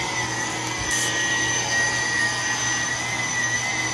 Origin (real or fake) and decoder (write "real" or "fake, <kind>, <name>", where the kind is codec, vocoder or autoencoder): fake, vocoder, BigVGAN v2